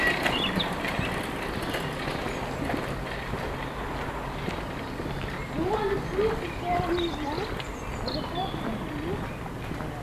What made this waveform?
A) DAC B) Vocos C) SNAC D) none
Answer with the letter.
D